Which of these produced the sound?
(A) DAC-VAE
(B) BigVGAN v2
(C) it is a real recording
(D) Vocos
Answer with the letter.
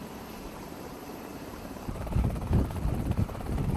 B